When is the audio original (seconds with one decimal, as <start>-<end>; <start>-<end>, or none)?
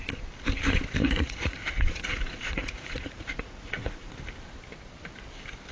0.0-1.0; 4.1-5.7